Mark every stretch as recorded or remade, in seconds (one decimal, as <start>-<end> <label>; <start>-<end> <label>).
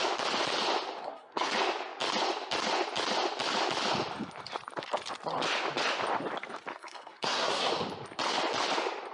0.0-1.0 recorded; 1.0-1.5 remade; 1.5-6.7 recorded; 6.7-7.7 remade; 7.7-9.1 recorded